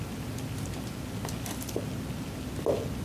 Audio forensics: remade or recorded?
recorded